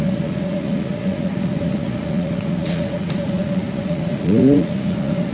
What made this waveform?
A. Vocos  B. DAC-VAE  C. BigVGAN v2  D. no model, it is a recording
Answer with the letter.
A